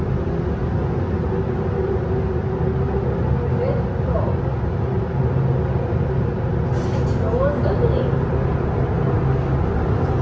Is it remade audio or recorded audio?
recorded